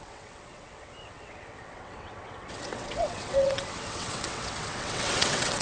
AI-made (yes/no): yes